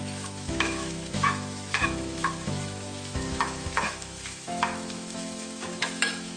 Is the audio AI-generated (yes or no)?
yes